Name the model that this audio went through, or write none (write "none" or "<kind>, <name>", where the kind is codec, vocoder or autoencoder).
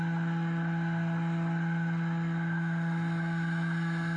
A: none